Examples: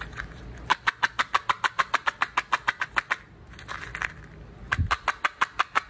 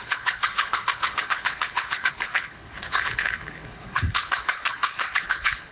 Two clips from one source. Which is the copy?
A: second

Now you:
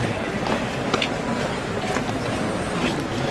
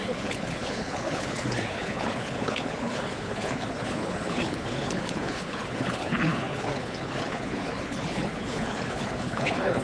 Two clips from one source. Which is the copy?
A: second